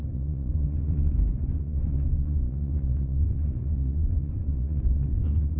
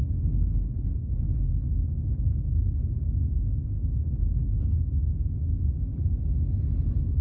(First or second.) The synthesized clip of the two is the first